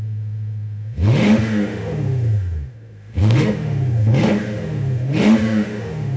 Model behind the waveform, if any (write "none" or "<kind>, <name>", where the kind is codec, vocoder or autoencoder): autoencoder, DAC-VAE